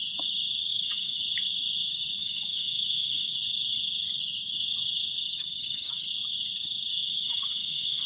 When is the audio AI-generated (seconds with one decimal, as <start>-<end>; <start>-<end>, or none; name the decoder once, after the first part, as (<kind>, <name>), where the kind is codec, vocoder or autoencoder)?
0.7-1.2 (autoencoder, DAC-VAE); 2.2-3.3; 5.5-6.1; 7.0-8.1